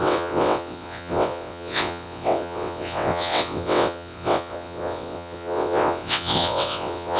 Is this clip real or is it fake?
fake